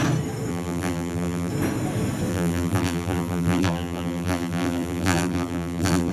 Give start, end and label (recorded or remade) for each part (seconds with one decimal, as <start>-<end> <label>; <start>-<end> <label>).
0.0-0.5 recorded; 0.5-1.5 remade; 1.5-2.3 recorded; 2.3-6.1 remade